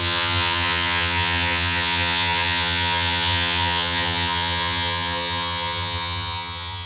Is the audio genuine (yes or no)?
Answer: no